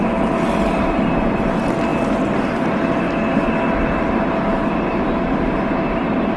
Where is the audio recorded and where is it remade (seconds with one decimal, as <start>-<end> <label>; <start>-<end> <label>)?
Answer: 0.0-6.4 recorded